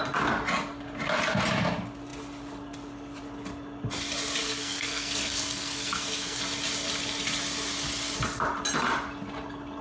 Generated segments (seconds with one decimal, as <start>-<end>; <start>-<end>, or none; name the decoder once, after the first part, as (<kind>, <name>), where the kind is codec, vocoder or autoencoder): 4.4-6.4 (codec, SNAC)